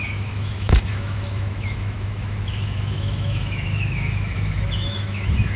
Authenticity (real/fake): fake